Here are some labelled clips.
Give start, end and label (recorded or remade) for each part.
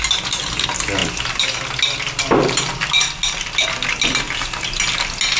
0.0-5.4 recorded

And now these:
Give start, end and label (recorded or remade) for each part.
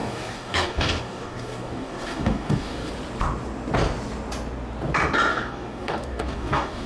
0.0-2.9 remade; 2.9-5.3 recorded; 5.3-6.9 remade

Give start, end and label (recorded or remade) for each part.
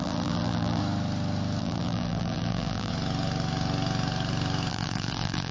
0.0-0.8 remade; 0.8-1.6 recorded; 1.6-2.9 remade; 2.9-4.7 recorded; 4.7-5.5 remade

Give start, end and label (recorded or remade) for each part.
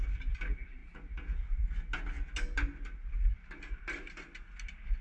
0.0-5.0 recorded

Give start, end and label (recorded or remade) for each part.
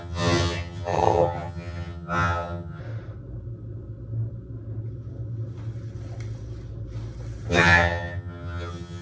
0.0-2.8 remade; 2.8-7.5 recorded; 7.5-9.0 remade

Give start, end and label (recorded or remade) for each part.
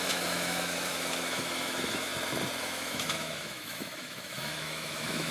0.0-2.1 remade; 2.1-2.6 recorded; 2.6-5.3 remade